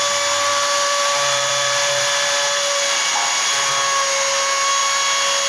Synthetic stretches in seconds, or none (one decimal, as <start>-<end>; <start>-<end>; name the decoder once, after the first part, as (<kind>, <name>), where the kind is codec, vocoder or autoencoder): 0.5-3.7 (vocoder, BigVGAN v2)